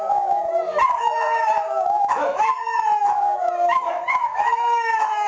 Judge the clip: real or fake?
fake